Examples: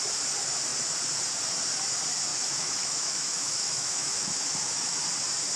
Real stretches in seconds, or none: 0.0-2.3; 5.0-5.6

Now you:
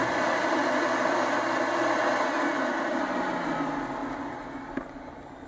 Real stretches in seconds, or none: 0.0-5.5

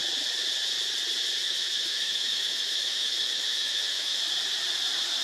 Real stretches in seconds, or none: 0.0-1.4; 4.2-5.2